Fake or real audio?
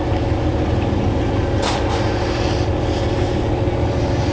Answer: real